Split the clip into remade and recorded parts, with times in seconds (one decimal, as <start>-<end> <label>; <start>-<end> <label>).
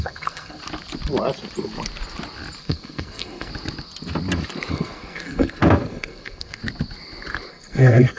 0.0-0.6 remade; 0.6-2.6 recorded; 2.6-3.5 remade; 3.5-4.7 recorded; 4.7-6.6 remade; 6.6-7.5 recorded; 7.5-8.2 remade